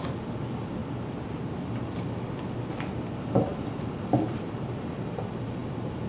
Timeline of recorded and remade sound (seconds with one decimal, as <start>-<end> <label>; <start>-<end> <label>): 0.0-0.8 recorded; 0.8-1.5 remade; 1.5-6.1 recorded